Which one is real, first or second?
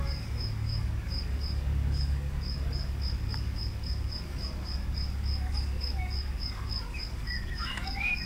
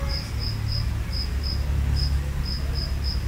second